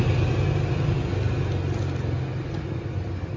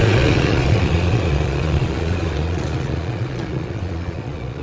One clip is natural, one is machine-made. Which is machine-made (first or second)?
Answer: second